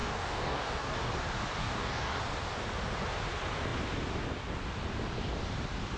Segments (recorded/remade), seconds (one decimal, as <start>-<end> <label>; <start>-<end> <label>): 0.0-1.1 remade; 1.1-1.6 recorded; 1.6-2.2 remade; 2.2-6.0 recorded

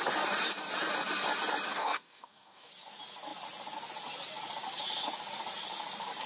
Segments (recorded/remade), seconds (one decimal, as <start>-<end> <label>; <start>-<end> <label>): 0.0-1.7 recorded; 1.7-2.7 remade; 2.7-6.3 recorded

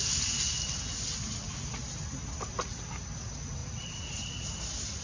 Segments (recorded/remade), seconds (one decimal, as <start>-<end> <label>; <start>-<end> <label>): 0.0-5.0 recorded

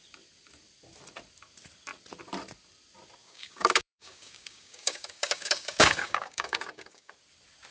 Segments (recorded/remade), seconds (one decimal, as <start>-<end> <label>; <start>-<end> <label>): 0.0-3.2 recorded; 3.2-7.1 remade; 7.1-7.7 recorded